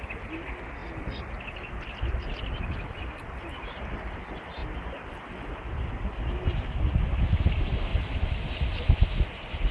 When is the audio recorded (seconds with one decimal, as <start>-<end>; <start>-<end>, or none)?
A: 0.0-9.7